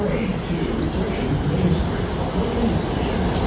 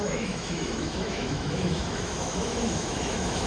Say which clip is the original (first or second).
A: first